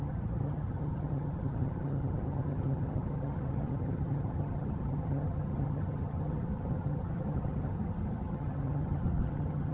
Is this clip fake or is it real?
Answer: fake